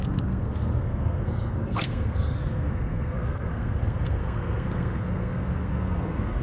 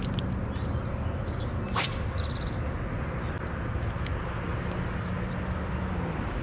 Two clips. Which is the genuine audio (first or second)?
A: second